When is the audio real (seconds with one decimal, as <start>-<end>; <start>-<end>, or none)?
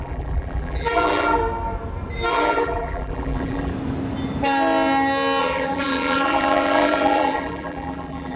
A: 1.4-2.3; 3.7-5.4